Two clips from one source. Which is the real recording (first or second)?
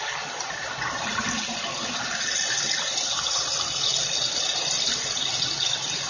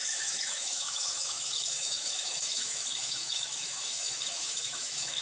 first